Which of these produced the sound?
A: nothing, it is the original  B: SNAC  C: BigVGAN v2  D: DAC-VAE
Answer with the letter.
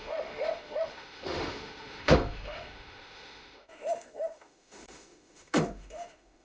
D